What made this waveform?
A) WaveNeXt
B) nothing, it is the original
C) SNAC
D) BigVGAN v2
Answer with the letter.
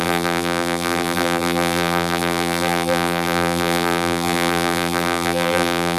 D